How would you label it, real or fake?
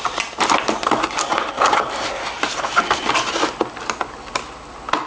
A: real